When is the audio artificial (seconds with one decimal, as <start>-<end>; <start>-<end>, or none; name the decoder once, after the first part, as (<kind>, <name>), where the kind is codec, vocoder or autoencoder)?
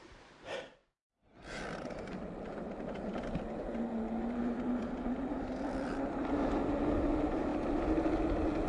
0.8-3.0 (vocoder, BigVGAN v2); 4.4-6.2; 7.5-8.2